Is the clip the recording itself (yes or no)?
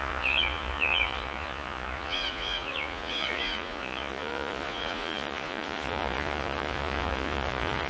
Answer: no